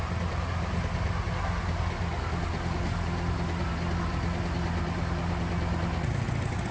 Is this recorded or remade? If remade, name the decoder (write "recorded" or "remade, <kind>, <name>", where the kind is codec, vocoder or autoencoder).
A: recorded